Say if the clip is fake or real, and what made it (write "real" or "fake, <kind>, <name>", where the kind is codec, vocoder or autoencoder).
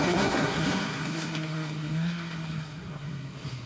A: fake, codec, SNAC